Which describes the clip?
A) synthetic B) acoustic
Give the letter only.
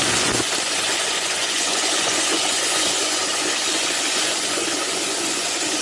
A